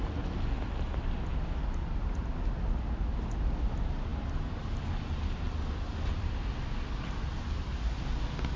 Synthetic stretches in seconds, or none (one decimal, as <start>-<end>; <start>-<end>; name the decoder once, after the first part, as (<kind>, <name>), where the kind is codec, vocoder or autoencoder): none